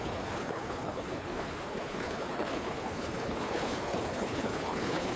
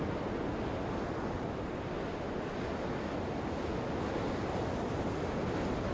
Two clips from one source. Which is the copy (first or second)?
first